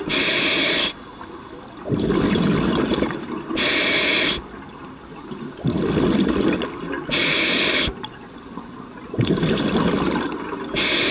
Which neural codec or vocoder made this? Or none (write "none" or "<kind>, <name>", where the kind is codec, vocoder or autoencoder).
none